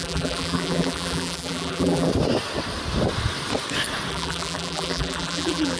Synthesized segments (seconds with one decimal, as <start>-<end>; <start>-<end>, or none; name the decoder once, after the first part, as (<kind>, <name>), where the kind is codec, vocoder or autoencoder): 0.0-2.1 (vocoder, BigVGAN v2); 4.1-5.8